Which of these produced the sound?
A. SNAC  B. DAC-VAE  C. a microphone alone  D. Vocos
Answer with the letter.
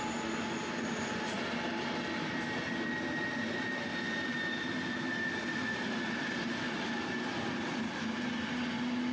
C